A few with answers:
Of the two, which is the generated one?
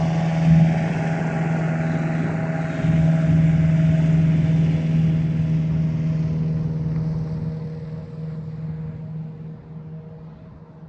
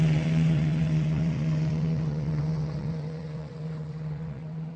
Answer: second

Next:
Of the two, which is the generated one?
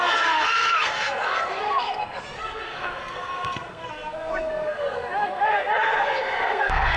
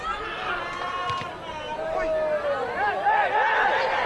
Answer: first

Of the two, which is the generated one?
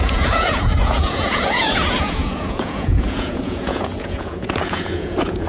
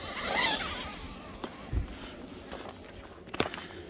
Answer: first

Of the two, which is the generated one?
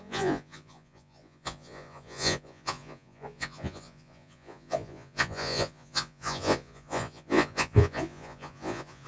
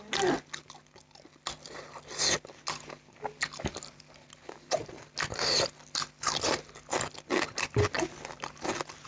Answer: first